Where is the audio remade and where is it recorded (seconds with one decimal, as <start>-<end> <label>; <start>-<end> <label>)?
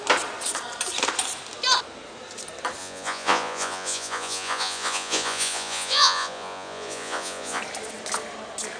0.0-2.8 recorded; 2.8-7.6 remade; 7.6-8.8 recorded